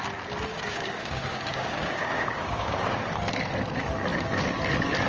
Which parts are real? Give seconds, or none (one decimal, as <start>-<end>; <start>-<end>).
0.0-0.5; 3.0-5.1